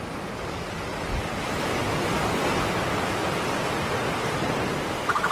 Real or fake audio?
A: real